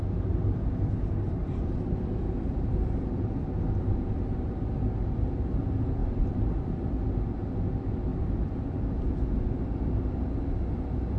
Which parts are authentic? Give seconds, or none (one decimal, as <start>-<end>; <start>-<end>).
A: 0.0-1.4; 4.3-6.0; 6.5-8.1; 9.6-11.2